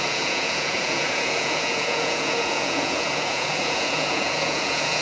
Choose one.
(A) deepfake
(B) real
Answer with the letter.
A